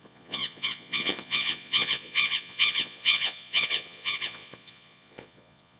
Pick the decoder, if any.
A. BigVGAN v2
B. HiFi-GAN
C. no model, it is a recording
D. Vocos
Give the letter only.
D